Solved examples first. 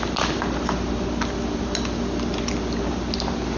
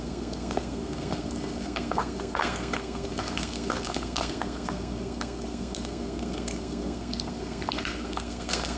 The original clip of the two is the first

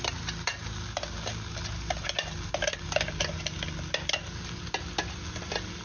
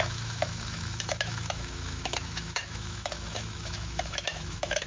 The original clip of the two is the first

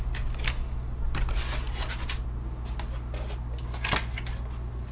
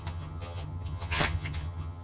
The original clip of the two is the first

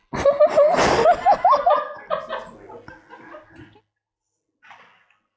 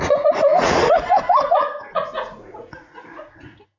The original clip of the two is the first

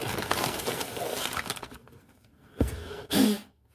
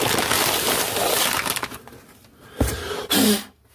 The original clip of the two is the second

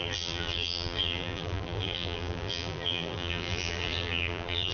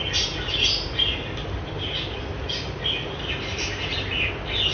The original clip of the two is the second